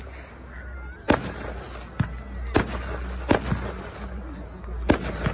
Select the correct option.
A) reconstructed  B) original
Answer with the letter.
B